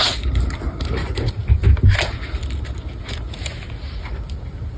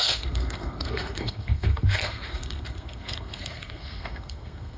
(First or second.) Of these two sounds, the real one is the first